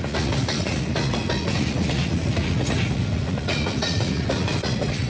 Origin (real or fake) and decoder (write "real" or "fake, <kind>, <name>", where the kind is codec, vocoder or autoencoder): fake, vocoder, Vocos